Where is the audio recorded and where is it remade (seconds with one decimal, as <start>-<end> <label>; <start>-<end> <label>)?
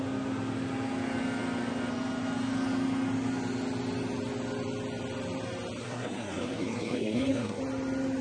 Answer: 0.0-5.8 recorded; 5.8-7.6 remade; 7.6-8.2 recorded